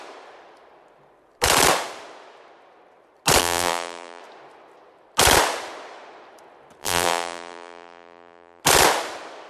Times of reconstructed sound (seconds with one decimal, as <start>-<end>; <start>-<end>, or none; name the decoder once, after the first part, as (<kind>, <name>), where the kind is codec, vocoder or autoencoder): 3.4-4.2 (vocoder, BigVGAN v2); 6.8-8.6